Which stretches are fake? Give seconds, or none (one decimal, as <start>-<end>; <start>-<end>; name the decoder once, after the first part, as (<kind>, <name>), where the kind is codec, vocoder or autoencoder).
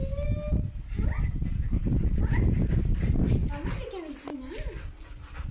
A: none